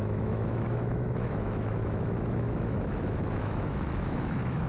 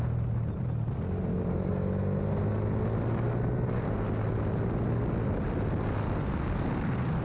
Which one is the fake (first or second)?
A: first